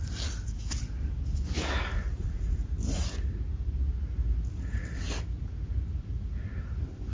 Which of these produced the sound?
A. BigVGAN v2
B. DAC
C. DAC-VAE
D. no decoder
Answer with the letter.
D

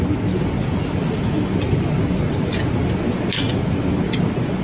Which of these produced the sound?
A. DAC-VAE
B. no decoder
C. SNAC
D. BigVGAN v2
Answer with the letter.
D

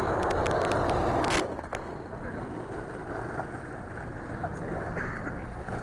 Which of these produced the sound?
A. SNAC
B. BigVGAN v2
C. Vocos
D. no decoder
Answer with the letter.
D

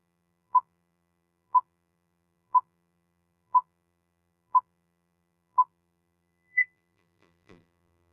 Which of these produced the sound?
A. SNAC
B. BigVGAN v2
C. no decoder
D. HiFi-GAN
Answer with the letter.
B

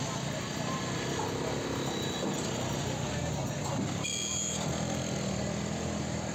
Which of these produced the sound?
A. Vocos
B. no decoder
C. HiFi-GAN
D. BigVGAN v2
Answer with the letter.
B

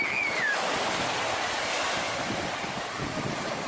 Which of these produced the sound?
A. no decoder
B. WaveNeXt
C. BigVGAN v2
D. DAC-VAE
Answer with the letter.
A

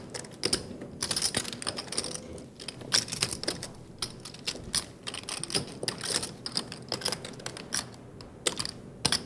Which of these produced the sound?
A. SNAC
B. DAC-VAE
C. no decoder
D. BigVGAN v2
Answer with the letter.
C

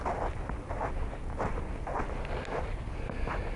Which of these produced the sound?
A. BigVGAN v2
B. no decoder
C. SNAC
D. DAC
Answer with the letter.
B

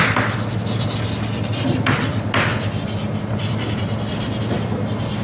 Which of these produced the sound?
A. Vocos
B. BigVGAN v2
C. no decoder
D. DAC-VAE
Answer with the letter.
C